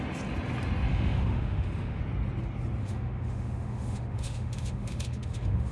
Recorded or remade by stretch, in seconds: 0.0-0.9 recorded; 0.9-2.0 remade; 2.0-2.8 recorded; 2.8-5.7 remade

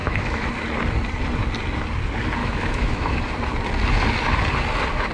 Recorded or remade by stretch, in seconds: 0.0-0.5 remade; 0.5-2.4 recorded; 2.4-3.2 remade; 3.2-5.1 recorded

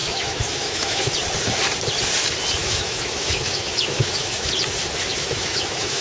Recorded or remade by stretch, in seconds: 0.0-1.1 remade; 1.1-2.6 recorded; 2.6-4.5 remade; 4.5-5.1 recorded; 5.1-6.0 remade

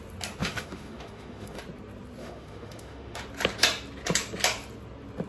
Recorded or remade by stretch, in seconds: 0.0-0.4 recorded; 0.4-1.6 remade; 1.6-2.2 recorded; 2.2-3.2 remade; 3.2-5.3 recorded

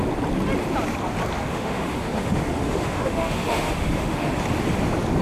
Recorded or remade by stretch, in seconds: 0.0-1.5 recorded; 1.5-4.3 remade; 4.3-5.2 recorded

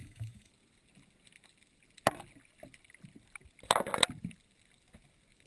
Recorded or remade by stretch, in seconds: 0.0-0.5 remade; 0.5-5.5 recorded

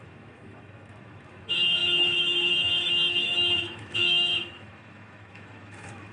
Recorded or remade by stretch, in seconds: 0.0-6.1 remade

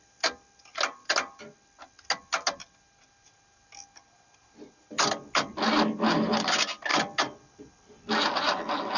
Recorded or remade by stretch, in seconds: 0.0-9.0 recorded